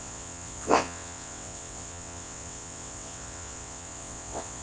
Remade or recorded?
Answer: remade